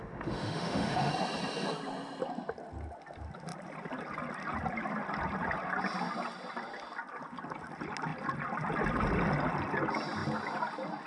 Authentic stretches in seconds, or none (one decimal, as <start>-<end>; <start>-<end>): 1.1-11.1